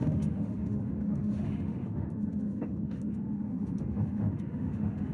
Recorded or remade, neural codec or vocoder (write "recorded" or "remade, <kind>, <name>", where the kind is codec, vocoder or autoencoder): remade, autoencoder, DAC-VAE